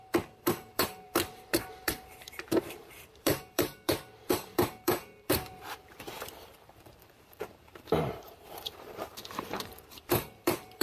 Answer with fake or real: fake